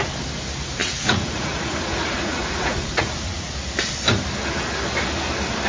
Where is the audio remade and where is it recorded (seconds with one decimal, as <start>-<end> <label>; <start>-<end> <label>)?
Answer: 0.0-0.8 recorded; 0.8-3.5 remade; 3.5-5.7 recorded

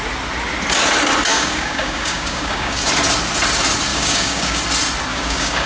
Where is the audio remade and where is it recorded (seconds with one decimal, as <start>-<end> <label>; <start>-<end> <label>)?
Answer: 0.0-1.3 recorded; 1.3-2.9 remade; 2.9-3.9 recorded; 3.9-4.6 remade; 4.6-5.1 recorded; 5.1-5.7 remade

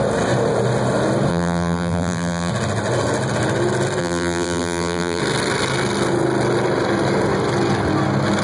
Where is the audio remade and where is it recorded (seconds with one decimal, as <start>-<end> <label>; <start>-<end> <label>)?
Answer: 0.0-1.3 recorded; 1.3-2.5 remade; 2.5-4.0 recorded; 4.0-5.2 remade; 5.2-8.4 recorded

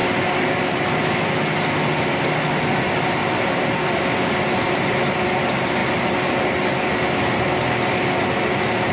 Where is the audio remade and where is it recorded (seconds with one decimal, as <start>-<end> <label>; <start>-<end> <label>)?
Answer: 0.0-8.9 recorded

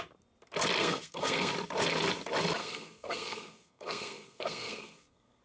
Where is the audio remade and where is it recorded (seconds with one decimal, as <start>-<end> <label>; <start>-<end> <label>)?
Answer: 0.0-0.8 recorded; 0.8-1.5 remade; 1.5-2.6 recorded; 2.6-5.4 remade